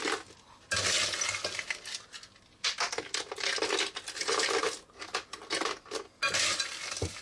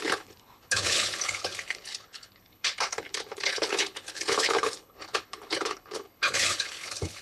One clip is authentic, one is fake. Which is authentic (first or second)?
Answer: first